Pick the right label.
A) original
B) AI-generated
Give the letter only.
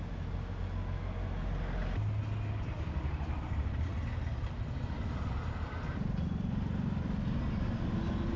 A